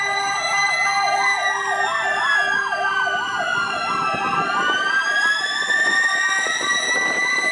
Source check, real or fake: real